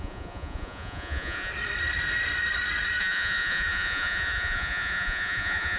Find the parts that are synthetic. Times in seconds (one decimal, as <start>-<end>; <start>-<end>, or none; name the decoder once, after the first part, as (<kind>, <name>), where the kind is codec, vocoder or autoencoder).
0.0-1.5 (vocoder, Vocos); 3.0-5.8